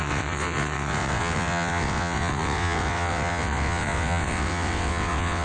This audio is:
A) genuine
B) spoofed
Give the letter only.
B